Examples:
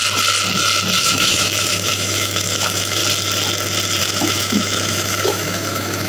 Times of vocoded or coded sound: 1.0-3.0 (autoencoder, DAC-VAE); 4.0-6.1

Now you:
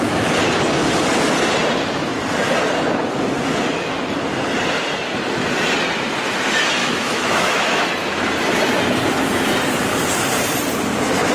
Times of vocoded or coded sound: 6.8-7.8 (autoencoder, DAC-VAE)

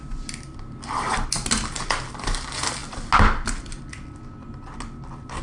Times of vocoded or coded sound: none

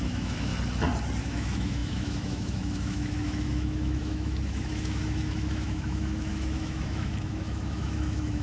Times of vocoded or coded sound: 0.0-0.5 (autoencoder, DAC-VAE); 1.2-8.4

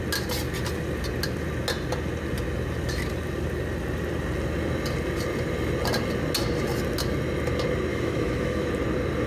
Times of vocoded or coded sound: 7.9-8.7 (autoencoder, DAC-VAE)

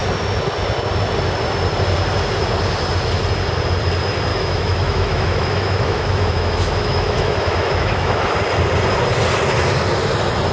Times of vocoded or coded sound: 4.3-8.3 (autoencoder, DAC-VAE)